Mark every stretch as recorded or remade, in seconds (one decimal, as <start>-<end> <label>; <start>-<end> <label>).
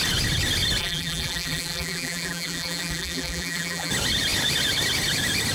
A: 0.0-0.8 recorded; 0.8-3.9 remade; 3.9-5.5 recorded